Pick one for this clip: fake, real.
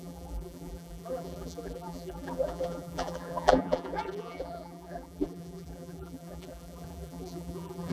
fake